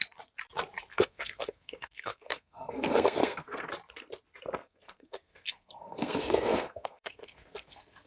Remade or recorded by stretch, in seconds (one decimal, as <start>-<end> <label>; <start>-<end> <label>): 0.0-0.9 recorded; 0.9-3.7 remade; 3.7-4.6 recorded; 4.6-8.1 remade